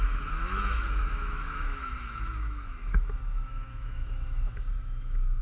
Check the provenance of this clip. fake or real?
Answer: fake